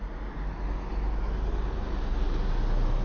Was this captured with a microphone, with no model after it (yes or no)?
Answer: yes